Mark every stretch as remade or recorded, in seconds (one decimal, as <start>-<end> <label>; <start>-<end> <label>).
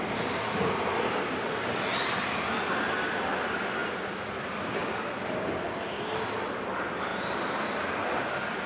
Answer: 0.0-8.7 recorded